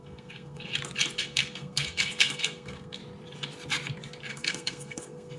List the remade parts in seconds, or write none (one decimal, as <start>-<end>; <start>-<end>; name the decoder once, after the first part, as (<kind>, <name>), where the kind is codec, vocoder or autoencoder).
0.0-0.7 (codec, SNAC); 1.2-3.0; 4.3-5.4